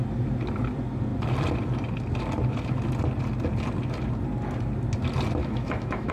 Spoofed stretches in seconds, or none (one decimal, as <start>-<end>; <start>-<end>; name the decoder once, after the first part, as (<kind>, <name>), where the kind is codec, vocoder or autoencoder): 5.4-6.1 (autoencoder, DAC-VAE)